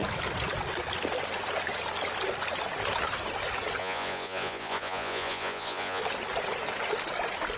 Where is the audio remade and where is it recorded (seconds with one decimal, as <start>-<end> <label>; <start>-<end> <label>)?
0.0-3.8 recorded; 3.8-6.0 remade; 6.0-7.6 recorded